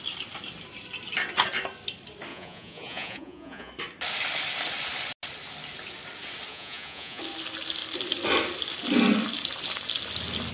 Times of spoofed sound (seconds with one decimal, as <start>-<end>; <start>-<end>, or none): 2.3-3.7; 6.5-7.2